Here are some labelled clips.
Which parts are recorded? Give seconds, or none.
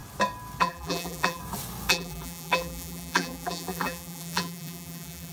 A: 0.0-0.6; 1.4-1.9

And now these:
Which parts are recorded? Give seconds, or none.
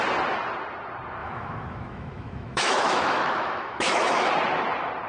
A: 0.0-1.2; 4.3-5.1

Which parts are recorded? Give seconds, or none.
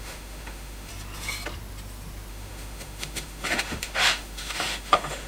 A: 0.9-2.3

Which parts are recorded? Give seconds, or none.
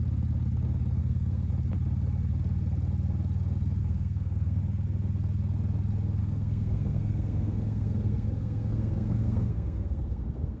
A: 0.0-1.0; 1.5-3.8; 4.6-6.2